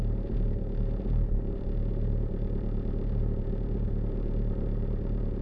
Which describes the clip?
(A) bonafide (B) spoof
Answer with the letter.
B